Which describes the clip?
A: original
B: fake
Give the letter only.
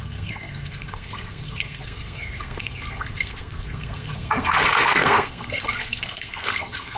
B